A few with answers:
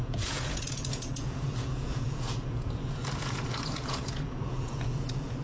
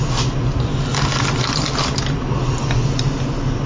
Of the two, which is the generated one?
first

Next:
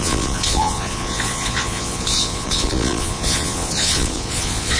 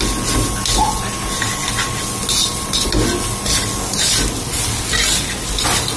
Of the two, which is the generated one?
first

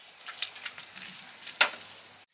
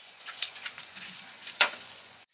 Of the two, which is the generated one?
second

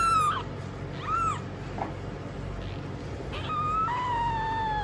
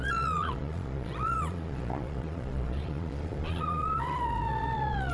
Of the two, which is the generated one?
second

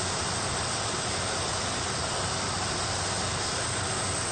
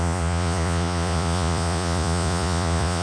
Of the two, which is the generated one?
second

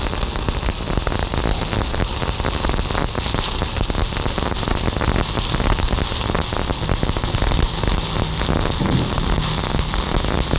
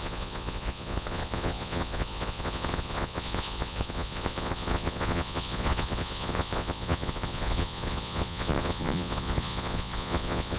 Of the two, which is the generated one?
second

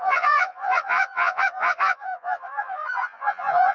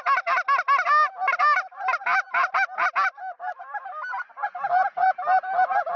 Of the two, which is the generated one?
first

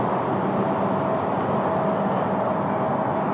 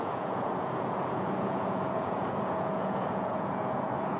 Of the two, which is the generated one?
second